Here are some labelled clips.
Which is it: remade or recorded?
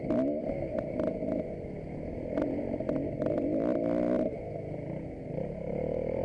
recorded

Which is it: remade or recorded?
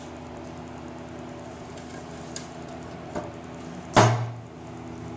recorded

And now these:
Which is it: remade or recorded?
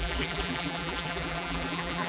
remade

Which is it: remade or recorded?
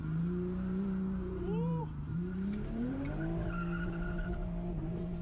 remade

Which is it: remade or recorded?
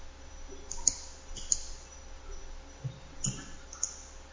recorded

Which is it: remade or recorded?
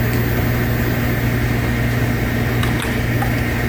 recorded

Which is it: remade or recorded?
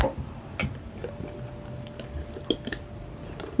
recorded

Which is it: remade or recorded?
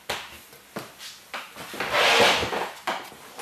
recorded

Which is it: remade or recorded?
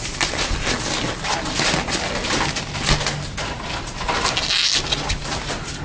recorded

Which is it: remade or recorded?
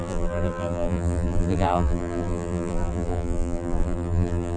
remade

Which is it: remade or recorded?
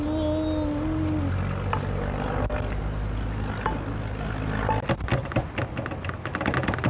recorded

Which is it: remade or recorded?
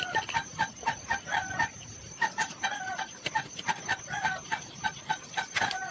remade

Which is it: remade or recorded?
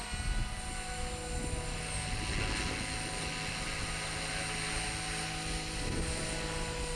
recorded